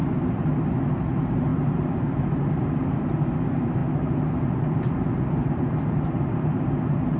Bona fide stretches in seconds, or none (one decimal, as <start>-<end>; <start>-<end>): 0.0-0.9